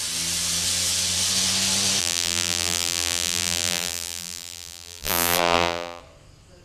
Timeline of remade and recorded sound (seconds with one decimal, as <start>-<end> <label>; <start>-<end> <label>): 0.0-2.0 recorded; 2.0-6.0 remade; 6.0-6.6 recorded